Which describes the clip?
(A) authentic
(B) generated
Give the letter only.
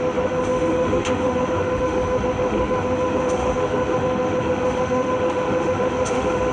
B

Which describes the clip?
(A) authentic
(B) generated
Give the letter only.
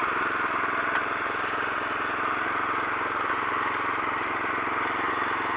A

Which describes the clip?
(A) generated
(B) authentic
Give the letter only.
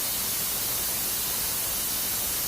B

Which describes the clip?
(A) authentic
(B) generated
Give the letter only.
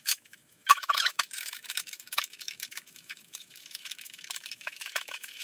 B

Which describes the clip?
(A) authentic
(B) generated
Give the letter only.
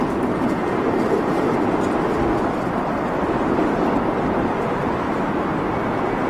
A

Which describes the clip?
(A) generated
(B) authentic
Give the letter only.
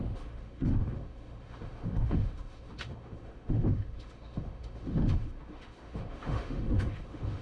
A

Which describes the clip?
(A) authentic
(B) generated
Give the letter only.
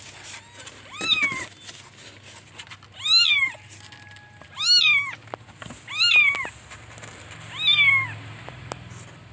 A